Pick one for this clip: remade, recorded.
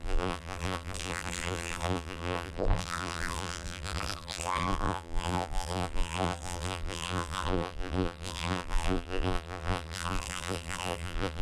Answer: remade